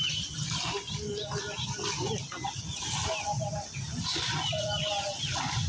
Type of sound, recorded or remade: recorded